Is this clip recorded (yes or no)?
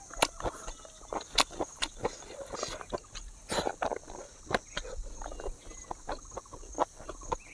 yes